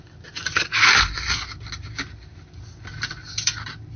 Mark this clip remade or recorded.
recorded